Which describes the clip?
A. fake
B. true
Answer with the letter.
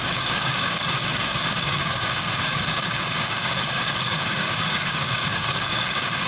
A